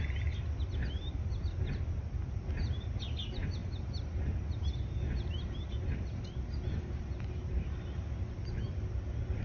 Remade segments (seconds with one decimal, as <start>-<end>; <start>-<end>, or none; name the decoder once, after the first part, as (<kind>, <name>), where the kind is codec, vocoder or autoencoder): none